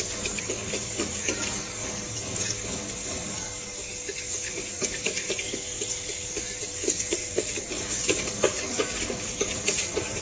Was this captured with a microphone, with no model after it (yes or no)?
no